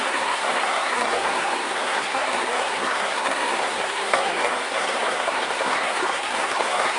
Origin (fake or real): fake